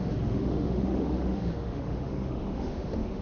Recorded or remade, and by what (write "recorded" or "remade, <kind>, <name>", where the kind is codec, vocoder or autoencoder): remade, autoencoder, DAC-VAE